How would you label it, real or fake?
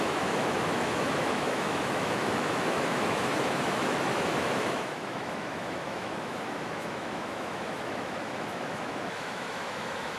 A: fake